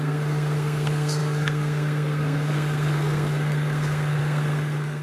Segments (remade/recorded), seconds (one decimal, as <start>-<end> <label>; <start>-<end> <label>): 0.0-5.0 remade